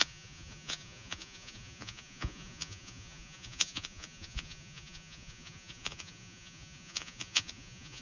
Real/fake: fake